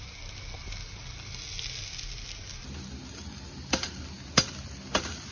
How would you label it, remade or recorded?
recorded